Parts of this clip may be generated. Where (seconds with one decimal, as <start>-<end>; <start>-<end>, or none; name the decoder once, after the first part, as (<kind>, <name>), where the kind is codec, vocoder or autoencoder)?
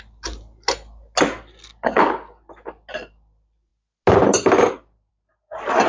none